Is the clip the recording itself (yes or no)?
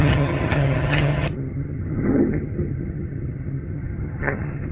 no